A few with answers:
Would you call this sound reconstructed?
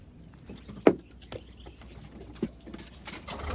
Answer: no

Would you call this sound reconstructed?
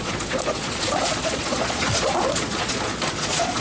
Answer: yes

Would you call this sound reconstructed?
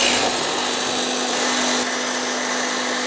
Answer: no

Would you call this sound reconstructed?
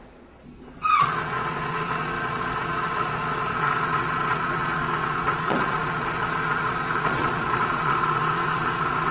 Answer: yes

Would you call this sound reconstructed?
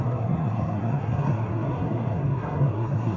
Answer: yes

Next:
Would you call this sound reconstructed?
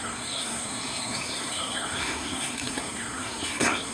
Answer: yes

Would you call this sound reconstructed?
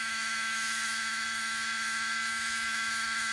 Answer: yes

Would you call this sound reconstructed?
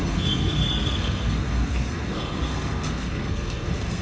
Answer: yes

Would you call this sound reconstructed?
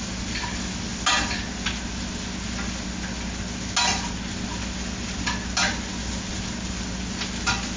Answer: no